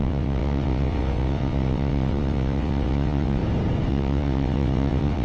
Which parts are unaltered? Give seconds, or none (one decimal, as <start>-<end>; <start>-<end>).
3.4-3.9